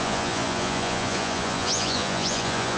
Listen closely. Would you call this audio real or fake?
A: fake